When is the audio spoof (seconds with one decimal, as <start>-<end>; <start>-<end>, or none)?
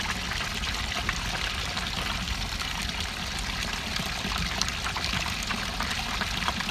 none